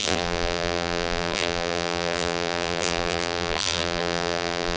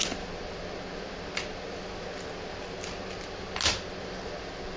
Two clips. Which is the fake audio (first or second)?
first